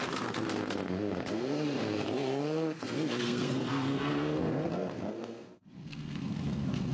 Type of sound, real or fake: fake